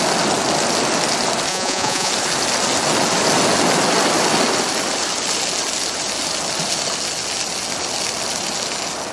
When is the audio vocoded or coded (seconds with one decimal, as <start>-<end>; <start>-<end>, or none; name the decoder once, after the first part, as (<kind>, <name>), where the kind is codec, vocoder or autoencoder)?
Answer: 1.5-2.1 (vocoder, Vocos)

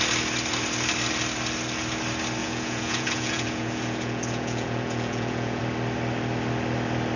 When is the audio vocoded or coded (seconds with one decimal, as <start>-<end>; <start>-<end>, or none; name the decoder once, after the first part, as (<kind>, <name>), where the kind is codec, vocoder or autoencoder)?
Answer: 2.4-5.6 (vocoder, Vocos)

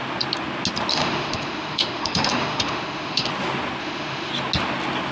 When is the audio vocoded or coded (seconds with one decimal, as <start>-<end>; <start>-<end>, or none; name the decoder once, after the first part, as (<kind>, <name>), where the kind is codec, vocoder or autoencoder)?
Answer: 0.9-3.3 (autoencoder, DAC-VAE); 3.8-4.3

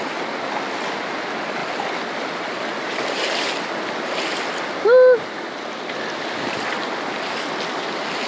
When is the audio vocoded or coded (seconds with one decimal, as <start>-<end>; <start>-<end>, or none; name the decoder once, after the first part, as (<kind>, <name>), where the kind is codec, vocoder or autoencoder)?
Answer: none

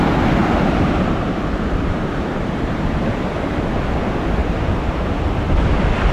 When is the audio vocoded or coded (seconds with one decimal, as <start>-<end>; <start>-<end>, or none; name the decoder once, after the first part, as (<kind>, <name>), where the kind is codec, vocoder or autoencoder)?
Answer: 0.4-3.3 (vocoder, BigVGAN v2); 4.4-5.1

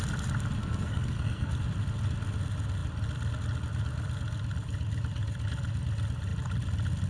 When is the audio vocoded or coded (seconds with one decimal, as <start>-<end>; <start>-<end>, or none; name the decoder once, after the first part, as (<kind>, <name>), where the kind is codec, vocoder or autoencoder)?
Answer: 0.6-1.5 (codec, SNAC)

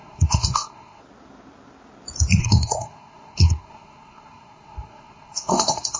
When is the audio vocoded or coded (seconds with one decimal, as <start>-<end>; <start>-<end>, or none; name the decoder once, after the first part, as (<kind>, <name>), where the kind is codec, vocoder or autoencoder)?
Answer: 0.0-1.0 (codec, SNAC); 2.4-6.0

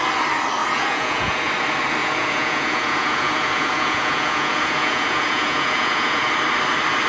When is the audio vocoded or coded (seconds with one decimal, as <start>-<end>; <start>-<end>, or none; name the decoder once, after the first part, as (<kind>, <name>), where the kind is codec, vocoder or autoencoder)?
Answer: 0.6-1.5 (vocoder, Vocos); 2.0-6.3